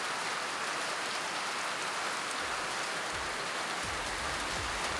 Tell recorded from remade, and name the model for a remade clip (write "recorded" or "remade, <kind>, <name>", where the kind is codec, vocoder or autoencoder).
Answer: recorded